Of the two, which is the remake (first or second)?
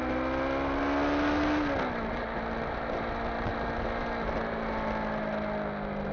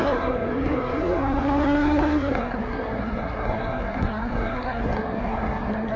second